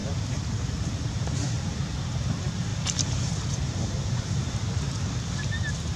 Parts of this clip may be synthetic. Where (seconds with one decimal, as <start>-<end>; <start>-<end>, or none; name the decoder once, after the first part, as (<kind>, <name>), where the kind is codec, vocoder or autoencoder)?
0.0-0.9 (vocoder, BigVGAN v2); 2.7-5.1